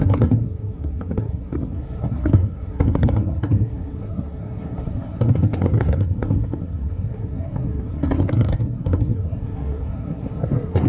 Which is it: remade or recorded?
remade